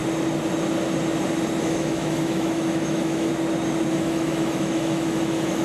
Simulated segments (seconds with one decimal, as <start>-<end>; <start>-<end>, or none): 1.6-3.3; 3.9-5.6